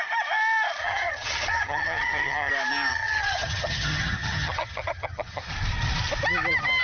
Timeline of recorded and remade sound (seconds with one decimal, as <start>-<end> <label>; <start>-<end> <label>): 0.0-0.8 recorded; 0.8-2.5 remade; 2.5-2.9 recorded; 2.9-5.5 remade; 5.5-6.8 recorded